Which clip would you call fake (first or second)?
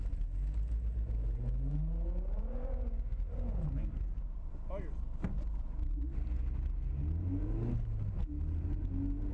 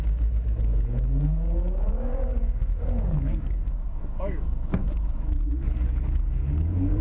second